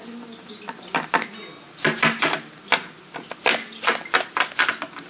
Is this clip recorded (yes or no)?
yes